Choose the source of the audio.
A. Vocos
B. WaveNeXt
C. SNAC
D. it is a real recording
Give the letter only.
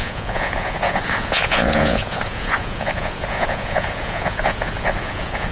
A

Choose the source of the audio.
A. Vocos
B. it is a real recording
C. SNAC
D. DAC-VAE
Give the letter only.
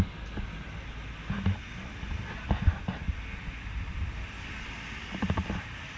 B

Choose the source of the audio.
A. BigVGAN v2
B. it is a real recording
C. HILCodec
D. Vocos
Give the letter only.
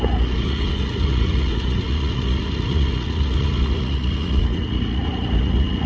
D